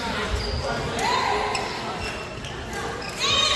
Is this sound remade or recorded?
recorded